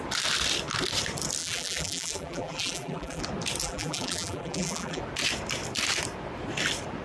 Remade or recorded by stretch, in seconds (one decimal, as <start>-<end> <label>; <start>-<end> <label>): 0.0-1.4 recorded; 1.4-3.2 remade; 3.2-3.6 recorded; 3.6-5.0 remade; 5.0-7.0 recorded